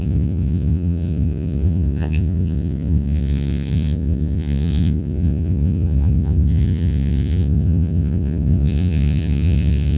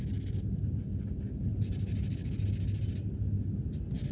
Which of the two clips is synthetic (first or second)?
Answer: first